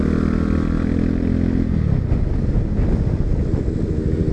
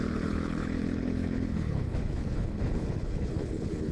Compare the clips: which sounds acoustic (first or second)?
first